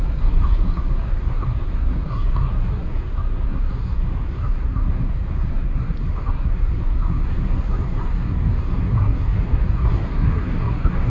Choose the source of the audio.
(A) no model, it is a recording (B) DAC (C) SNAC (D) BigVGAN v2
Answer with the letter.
C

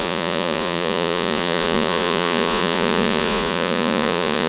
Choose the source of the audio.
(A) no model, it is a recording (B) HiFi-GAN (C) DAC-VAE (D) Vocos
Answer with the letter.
D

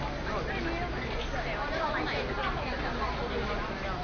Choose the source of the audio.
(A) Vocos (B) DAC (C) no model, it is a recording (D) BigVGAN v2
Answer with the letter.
C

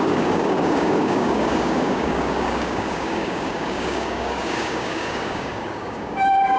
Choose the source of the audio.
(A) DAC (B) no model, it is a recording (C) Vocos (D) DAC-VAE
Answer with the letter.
A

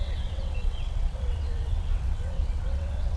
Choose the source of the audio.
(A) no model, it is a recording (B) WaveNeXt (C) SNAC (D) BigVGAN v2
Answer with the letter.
B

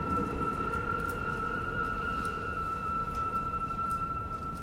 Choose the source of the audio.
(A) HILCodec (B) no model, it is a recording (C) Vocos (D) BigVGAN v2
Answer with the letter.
D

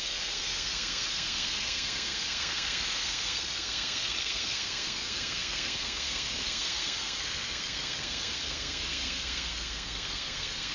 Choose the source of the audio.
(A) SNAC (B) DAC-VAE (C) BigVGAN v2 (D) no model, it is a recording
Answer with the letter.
A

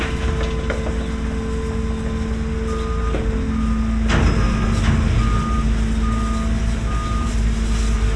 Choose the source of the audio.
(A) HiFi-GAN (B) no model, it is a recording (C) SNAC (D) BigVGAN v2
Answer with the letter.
B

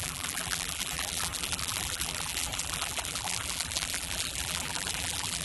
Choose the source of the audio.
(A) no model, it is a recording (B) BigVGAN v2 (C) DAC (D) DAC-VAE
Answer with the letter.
B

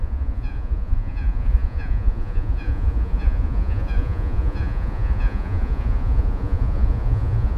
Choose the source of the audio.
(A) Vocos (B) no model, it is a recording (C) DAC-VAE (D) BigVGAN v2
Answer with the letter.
A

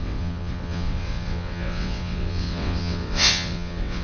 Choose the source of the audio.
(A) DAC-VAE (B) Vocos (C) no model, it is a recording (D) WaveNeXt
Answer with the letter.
D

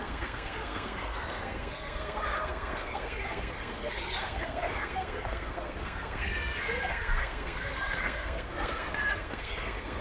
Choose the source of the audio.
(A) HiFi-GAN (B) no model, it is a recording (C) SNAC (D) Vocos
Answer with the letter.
C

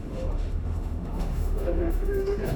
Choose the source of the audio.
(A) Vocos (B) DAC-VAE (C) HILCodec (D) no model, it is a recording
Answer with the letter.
B